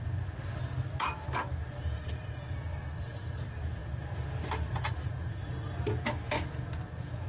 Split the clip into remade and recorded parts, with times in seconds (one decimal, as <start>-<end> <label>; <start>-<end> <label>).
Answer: 0.0-7.3 recorded

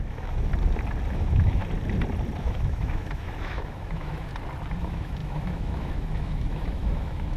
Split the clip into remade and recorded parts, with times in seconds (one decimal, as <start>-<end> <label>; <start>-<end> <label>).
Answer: 0.0-0.5 remade; 0.5-1.1 recorded; 1.1-1.6 remade; 1.6-2.4 recorded; 2.4-4.3 remade; 4.3-4.8 recorded; 4.8-7.4 remade

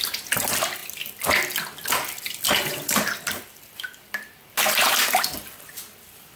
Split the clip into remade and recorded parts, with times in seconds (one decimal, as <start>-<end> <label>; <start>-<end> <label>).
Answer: 0.0-6.4 recorded

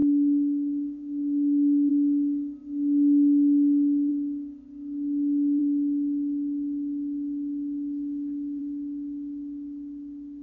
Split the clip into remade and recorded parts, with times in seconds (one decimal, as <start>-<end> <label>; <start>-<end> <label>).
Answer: 0.0-1.9 remade; 1.9-10.4 recorded

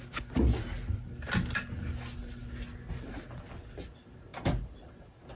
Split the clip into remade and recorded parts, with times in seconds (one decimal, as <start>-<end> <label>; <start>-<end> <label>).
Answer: 0.0-5.4 recorded